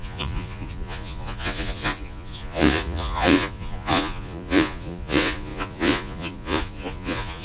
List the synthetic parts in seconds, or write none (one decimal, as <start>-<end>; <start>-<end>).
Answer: 0.0-7.4